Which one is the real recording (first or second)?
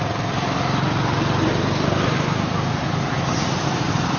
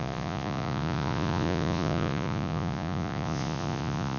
first